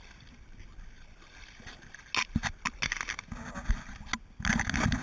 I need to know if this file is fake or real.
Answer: real